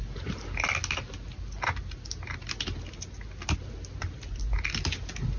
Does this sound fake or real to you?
real